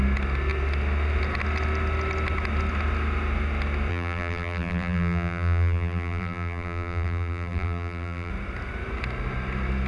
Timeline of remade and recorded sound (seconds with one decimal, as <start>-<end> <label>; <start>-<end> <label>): 0.0-3.9 recorded; 3.9-8.3 remade; 8.3-9.9 recorded

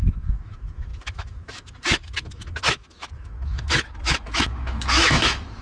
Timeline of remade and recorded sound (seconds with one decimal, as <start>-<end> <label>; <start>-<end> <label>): 0.0-5.6 remade